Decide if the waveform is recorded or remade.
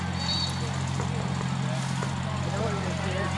remade